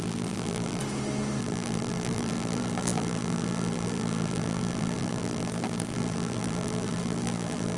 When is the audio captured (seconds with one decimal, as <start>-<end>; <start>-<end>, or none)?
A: 0.8-1.4